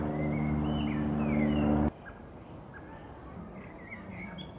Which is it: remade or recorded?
recorded